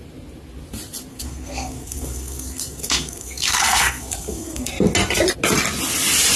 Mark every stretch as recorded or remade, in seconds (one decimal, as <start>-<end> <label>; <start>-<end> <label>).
0.0-1.1 recorded; 1.1-4.7 remade; 4.7-6.4 recorded

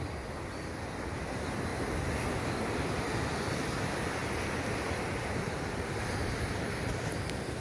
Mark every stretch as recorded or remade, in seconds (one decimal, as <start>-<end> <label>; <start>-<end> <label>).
0.0-1.7 remade; 1.7-2.3 recorded; 2.3-4.2 remade; 4.2-5.6 recorded; 5.6-7.6 remade

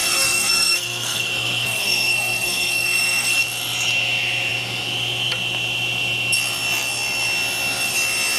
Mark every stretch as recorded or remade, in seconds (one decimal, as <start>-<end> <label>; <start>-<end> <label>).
0.0-3.4 remade; 3.4-8.4 recorded

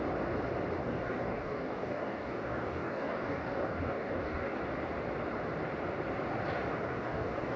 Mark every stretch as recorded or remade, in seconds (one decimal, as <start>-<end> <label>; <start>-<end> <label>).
0.0-0.8 recorded; 0.8-4.6 remade; 4.6-6.7 recorded; 6.7-7.6 remade

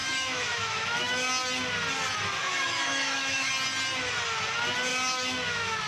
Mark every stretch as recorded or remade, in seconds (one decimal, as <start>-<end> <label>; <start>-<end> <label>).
0.0-1.3 remade; 1.3-2.4 recorded; 2.4-3.5 remade; 3.5-4.9 recorded; 4.9-5.9 remade

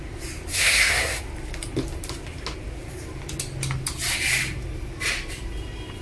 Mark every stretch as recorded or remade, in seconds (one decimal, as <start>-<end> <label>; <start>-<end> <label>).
0.0-0.5 recorded; 0.5-1.2 remade; 1.2-6.0 recorded

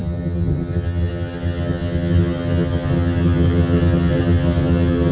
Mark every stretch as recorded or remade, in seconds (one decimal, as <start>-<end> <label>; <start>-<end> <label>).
0.0-5.1 remade